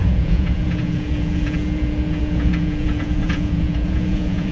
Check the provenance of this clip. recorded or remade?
remade